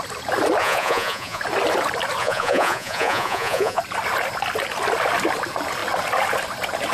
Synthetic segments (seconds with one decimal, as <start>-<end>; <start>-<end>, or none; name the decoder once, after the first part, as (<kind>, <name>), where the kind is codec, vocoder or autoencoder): 0.6-1.4 (vocoder, Vocos); 2.2-3.8